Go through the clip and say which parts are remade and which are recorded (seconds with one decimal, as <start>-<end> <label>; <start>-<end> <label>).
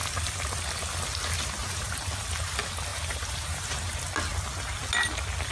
0.0-1.6 recorded; 1.6-2.1 remade; 2.1-2.9 recorded; 2.9-3.8 remade; 3.8-5.5 recorded